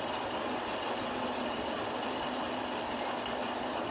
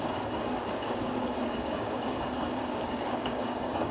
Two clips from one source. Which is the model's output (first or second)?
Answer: second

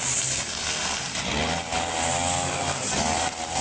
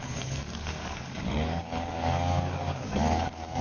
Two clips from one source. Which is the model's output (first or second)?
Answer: second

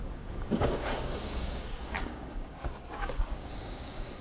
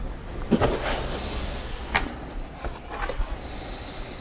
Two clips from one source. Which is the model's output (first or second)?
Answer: first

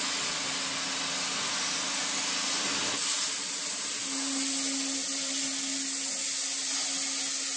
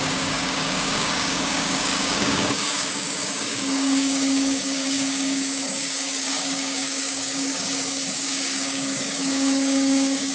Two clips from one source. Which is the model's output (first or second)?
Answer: second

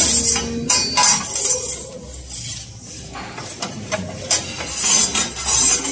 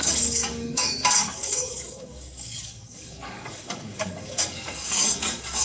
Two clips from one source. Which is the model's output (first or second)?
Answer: second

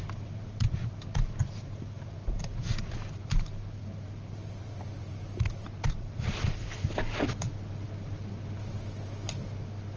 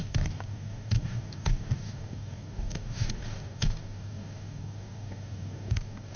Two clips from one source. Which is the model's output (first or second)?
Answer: second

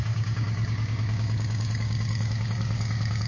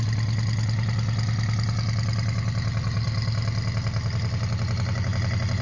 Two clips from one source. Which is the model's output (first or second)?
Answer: first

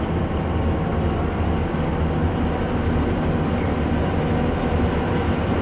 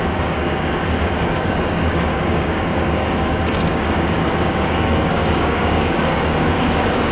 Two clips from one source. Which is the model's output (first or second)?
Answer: second